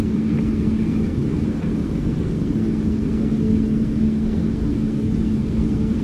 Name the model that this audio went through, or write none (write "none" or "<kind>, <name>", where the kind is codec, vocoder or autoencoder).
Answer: codec, SNAC